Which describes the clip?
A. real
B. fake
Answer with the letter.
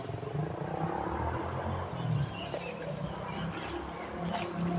A